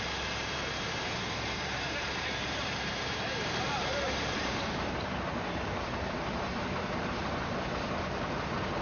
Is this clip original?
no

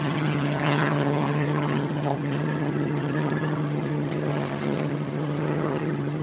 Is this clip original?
no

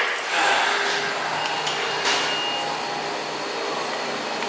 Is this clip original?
yes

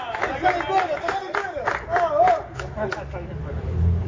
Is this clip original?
yes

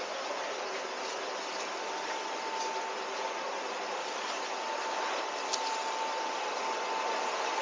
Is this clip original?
yes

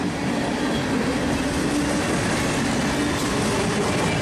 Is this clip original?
yes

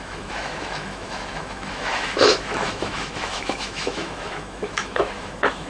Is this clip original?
no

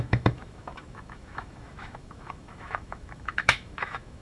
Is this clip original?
no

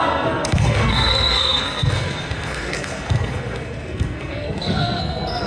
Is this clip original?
no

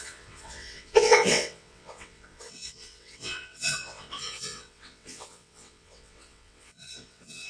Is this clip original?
no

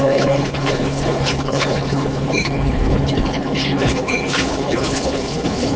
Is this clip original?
no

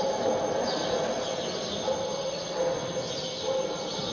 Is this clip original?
yes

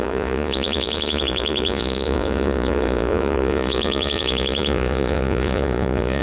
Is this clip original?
no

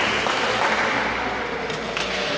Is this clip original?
yes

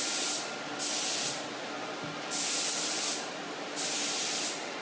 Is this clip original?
yes